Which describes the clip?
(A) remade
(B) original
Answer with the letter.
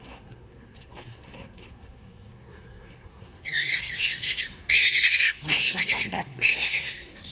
A